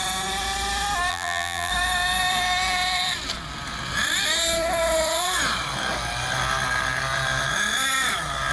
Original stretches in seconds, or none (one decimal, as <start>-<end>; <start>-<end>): 0.0-1.1; 1.7-8.5